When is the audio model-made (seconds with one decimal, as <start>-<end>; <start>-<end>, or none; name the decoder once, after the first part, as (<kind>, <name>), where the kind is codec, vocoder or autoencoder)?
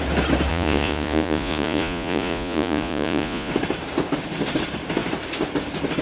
0.5-3.5 (vocoder, Vocos)